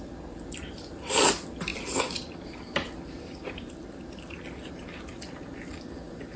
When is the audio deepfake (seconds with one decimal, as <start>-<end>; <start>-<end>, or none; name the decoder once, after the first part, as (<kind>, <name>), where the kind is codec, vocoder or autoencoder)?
none